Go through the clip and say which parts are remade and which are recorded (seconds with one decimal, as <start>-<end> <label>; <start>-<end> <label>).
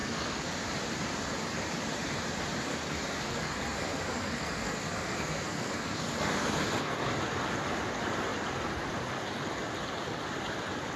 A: 0.0-0.6 remade; 0.6-2.7 recorded; 2.7-7.1 remade; 7.1-11.0 recorded